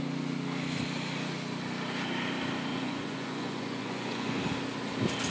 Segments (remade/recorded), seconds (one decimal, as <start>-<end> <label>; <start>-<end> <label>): 0.0-2.7 recorded; 2.7-4.4 remade; 4.4-5.3 recorded